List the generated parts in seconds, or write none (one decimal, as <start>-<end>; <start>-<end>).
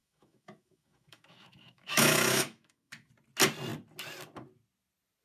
0.0-3.1